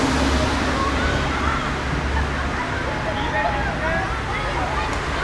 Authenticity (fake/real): real